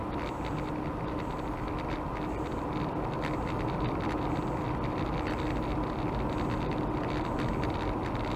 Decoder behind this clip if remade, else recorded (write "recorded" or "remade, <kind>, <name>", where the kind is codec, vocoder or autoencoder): recorded